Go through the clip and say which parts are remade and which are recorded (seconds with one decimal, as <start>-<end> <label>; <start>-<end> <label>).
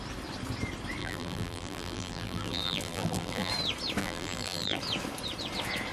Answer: 0.0-1.0 recorded; 1.0-3.5 remade; 3.5-4.0 recorded; 4.0-4.8 remade; 4.8-5.9 recorded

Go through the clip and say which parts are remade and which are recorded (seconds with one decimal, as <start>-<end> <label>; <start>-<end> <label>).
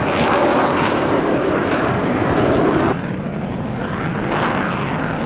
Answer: 0.0-0.5 recorded; 0.5-2.4 remade; 2.4-5.3 recorded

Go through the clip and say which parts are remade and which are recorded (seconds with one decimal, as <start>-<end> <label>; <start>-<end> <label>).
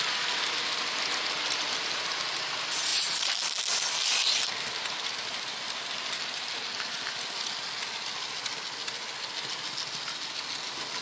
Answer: 0.0-2.9 recorded; 2.9-3.8 remade; 3.8-11.0 recorded